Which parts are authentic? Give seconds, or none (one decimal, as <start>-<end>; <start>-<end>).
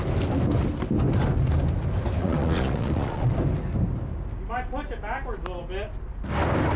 0.0-2.2; 3.3-6.8